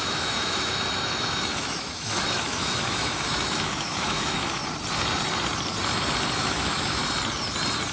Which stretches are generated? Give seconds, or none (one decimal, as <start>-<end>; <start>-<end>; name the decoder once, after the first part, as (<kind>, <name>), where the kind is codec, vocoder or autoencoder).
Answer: 0.0-4.6 (autoencoder, DAC-VAE); 6.4-7.0